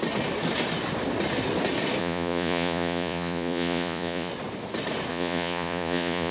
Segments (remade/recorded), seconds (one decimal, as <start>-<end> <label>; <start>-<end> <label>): 0.0-2.0 recorded; 2.0-4.3 remade; 4.3-5.1 recorded; 5.1-6.3 remade